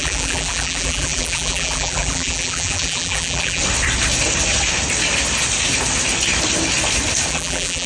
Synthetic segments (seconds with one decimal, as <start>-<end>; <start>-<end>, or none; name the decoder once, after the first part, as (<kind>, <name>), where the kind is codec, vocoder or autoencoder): 0.0-3.6 (vocoder, BigVGAN v2); 7.3-7.9